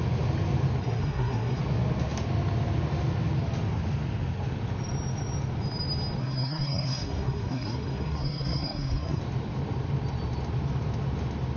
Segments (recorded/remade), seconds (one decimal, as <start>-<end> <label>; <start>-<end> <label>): 0.0-0.8 recorded; 0.8-1.6 remade; 1.6-6.2 recorded; 6.2-9.2 remade; 9.2-11.6 recorded